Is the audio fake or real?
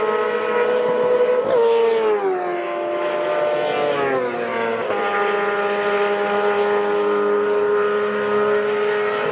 real